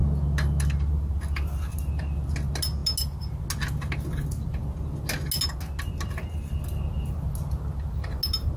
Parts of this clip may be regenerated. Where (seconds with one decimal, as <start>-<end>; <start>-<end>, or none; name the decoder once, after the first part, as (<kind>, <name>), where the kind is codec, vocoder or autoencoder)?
none